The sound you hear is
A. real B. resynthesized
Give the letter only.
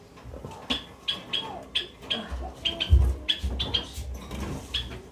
A